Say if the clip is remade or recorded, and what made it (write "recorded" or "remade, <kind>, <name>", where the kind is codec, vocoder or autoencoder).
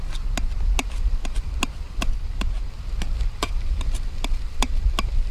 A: recorded